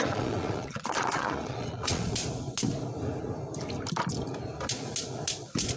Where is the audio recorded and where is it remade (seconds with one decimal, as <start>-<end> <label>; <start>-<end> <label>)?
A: 0.0-2.2 remade; 2.2-5.8 recorded